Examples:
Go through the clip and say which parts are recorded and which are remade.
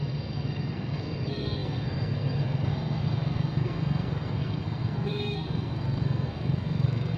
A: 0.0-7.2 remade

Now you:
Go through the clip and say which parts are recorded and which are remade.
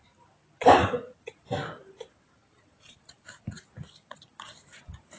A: 0.0-2.4 recorded; 2.4-3.6 remade; 3.6-5.2 recorded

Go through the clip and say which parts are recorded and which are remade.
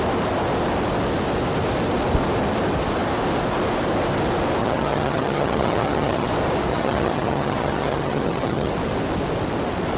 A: 0.0-4.6 recorded; 4.6-6.3 remade; 6.3-6.7 recorded; 6.7-8.7 remade; 8.7-10.0 recorded